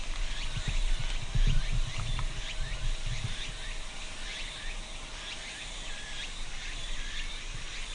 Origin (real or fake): real